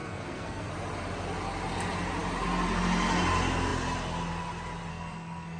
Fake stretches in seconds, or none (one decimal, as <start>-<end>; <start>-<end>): 0.0-0.7; 4.9-5.6